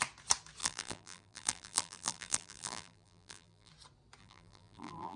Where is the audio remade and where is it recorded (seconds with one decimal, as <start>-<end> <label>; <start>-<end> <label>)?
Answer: 0.0-0.6 recorded; 0.6-3.7 remade; 3.7-4.2 recorded; 4.2-5.2 remade

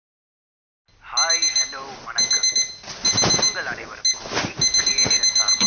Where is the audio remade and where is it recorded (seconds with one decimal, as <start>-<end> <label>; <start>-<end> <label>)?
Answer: 0.0-5.7 recorded

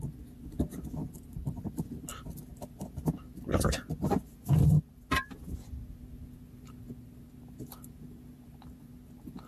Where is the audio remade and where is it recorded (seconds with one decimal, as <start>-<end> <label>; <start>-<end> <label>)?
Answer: 0.0-1.0 recorded; 1.0-1.6 remade; 1.6-9.5 recorded

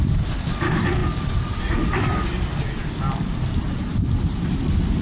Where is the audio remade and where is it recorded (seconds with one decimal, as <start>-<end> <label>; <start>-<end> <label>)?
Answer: 0.0-5.0 remade

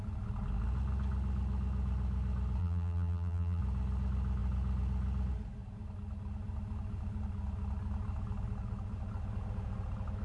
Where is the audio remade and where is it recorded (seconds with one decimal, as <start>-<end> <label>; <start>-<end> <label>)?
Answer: 0.0-2.6 recorded; 2.6-3.6 remade; 3.6-10.2 recorded

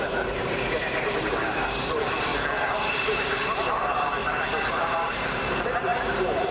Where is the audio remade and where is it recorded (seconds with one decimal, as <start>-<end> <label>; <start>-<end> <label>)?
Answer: 0.0-2.3 remade; 2.3-2.9 recorded; 2.9-4.2 remade; 4.2-4.7 recorded; 4.7-6.5 remade

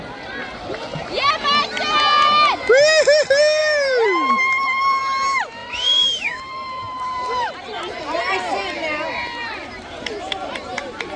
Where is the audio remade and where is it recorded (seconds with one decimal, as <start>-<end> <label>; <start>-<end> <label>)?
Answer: 0.0-3.6 recorded; 3.6-5.0 remade; 5.0-5.6 recorded; 5.6-11.2 remade